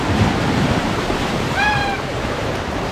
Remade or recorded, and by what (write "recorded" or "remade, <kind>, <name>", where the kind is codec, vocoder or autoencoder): remade, vocoder, BigVGAN v2